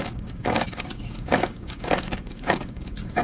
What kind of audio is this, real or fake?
fake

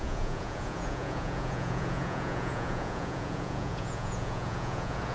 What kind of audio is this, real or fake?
fake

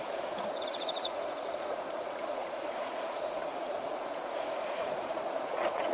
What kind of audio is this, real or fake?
fake